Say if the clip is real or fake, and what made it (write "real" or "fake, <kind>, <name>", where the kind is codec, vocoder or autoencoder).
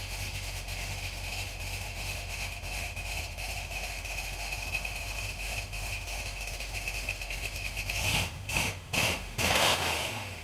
fake, autoencoder, DAC-VAE